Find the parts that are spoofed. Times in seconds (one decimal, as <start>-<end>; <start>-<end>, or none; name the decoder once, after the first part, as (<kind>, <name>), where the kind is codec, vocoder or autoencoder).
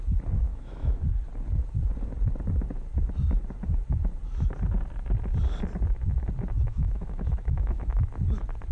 0.5-1.0 (autoencoder, DAC-VAE); 6.7-8.0